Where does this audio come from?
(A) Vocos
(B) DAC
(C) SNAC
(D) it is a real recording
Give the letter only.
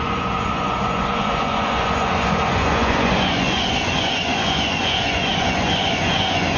A